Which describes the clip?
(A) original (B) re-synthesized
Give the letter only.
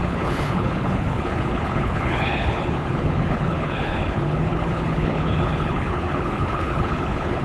B